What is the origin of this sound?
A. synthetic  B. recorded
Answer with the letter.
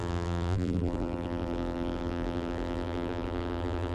A